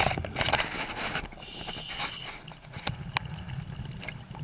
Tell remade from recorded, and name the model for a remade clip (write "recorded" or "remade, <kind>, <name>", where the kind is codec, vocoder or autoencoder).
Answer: recorded